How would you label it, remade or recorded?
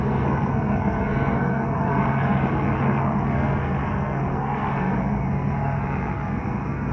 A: remade